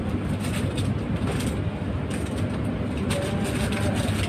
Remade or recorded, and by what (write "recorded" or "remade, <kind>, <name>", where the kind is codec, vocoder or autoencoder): recorded